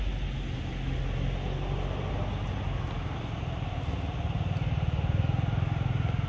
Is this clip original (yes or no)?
yes